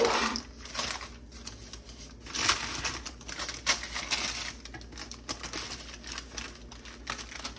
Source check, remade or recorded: recorded